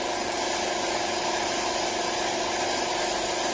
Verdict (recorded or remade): recorded